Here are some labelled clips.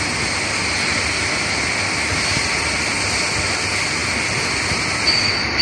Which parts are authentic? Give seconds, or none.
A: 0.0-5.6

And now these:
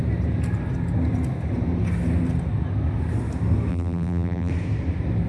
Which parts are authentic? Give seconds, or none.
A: 0.0-3.7; 4.5-5.3

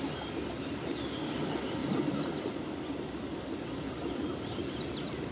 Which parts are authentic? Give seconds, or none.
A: 0.0-5.3